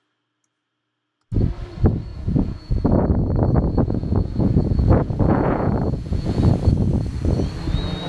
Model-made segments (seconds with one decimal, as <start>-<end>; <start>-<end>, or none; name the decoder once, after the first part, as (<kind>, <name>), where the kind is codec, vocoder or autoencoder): 2.1-6.4 (vocoder, Vocos)